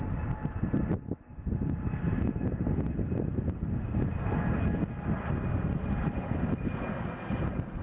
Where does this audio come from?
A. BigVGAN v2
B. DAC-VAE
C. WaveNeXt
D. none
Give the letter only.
D